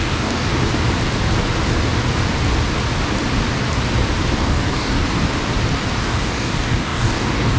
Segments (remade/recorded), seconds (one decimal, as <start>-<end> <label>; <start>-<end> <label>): 0.0-0.5 remade; 0.5-4.4 recorded; 4.4-5.0 remade; 5.0-6.0 recorded; 6.0-7.6 remade